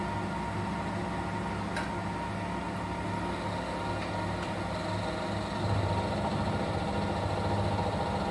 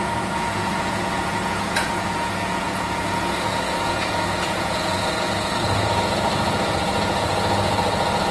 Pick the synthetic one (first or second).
second